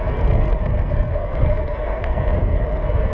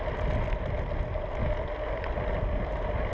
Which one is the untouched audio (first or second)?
second